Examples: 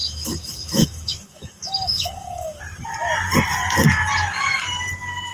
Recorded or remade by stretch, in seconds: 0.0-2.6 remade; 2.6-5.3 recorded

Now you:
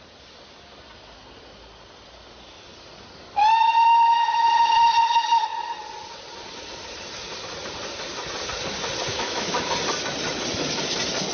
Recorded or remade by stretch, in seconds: 0.0-9.1 recorded; 9.1-9.7 remade; 9.7-11.3 recorded

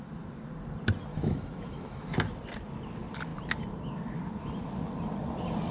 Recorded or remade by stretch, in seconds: 0.0-1.1 recorded; 1.1-2.1 remade; 2.1-5.7 recorded

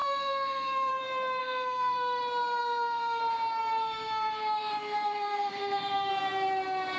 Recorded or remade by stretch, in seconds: 0.0-0.9 remade; 0.9-1.4 recorded; 1.4-2.2 remade; 2.2-2.6 recorded; 2.6-3.2 remade; 3.2-3.8 recorded; 3.8-6.1 remade; 6.1-7.0 recorded

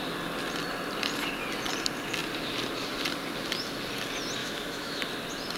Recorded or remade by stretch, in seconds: 0.0-4.4 recorded; 4.4-5.0 remade; 5.0-5.6 recorded

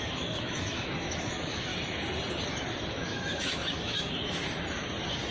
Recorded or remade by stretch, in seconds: 0.0-1.7 remade; 1.7-2.9 recorded; 2.9-4.4 remade; 4.4-5.3 recorded

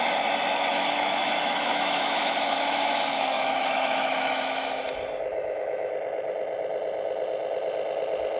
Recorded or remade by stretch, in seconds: 0.0-0.7 recorded; 0.7-4.8 remade; 4.8-5.3 recorded; 5.3-5.9 remade; 5.9-8.4 recorded

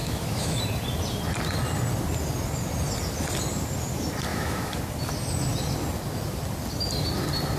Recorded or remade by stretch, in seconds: 0.0-0.6 remade; 0.6-4.3 recorded; 4.3-4.8 remade; 4.8-7.6 recorded